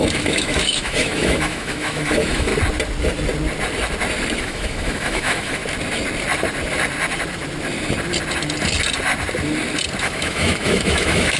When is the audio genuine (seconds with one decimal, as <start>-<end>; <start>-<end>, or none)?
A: 2.5-4.4; 5.6-10.0